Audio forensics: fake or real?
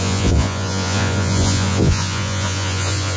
fake